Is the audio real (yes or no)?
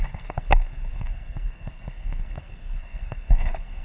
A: no